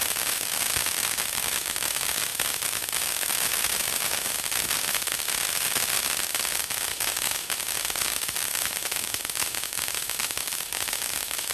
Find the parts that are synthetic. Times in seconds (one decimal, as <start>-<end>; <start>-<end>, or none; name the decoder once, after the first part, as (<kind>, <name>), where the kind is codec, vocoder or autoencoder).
0.0-11.5 (autoencoder, DAC-VAE)